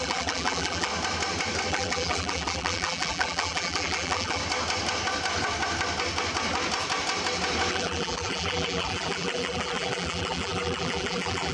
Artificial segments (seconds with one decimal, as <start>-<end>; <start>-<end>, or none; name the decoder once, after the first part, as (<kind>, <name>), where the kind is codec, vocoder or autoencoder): 0.0-0.9 (vocoder, BigVGAN v2); 1.7-4.4; 7.7-11.5